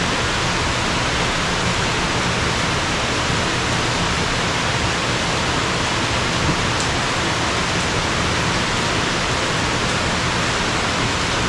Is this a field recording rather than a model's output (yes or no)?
yes